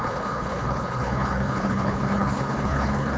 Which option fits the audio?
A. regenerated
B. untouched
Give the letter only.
A